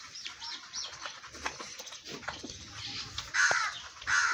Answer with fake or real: real